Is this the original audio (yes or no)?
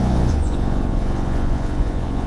no